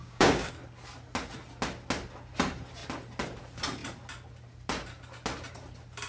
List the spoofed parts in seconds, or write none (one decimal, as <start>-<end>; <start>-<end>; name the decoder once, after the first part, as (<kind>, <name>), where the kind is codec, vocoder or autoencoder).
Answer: 0.0-0.5 (codec, DAC)